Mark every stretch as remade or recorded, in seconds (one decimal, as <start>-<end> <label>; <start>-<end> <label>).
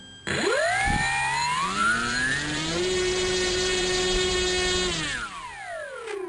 0.0-1.8 recorded; 1.8-4.3 remade; 4.3-6.3 recorded